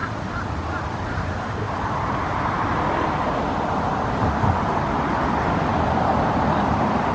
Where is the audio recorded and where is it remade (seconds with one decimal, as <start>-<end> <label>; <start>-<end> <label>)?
0.0-7.1 remade

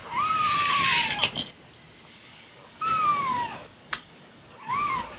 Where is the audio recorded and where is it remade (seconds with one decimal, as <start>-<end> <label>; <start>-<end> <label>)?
0.0-2.1 recorded; 2.1-5.2 remade